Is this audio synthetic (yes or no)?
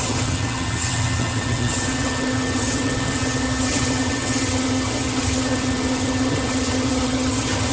yes